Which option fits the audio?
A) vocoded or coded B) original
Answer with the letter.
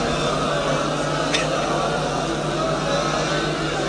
B